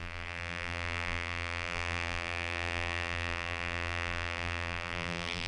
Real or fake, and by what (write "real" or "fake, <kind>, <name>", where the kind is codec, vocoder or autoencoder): fake, vocoder, BigVGAN v2